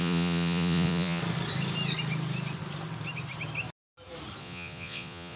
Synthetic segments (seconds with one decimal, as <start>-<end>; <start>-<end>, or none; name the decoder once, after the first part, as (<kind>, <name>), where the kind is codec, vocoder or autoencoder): 0.0-1.2 (vocoder, Vocos); 4.4-5.4